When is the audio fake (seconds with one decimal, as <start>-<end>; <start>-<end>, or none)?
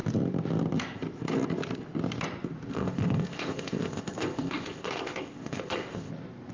2.7-6.1